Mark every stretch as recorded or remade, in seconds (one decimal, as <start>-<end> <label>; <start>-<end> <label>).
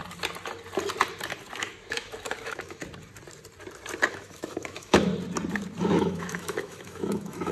0.0-1.6 recorded; 1.6-2.8 remade; 2.8-4.1 recorded; 4.1-5.1 remade; 5.1-5.8 recorded; 5.8-7.5 remade